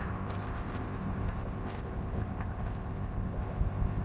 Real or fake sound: fake